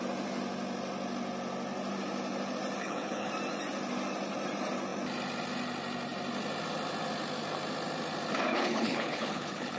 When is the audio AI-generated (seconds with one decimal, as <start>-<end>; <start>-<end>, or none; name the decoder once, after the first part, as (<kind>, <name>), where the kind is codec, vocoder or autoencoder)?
2.8-3.3 (codec, HILCodec); 8.5-9.8